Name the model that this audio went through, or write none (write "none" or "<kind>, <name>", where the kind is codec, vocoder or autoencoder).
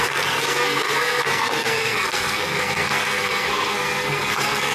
codec, SNAC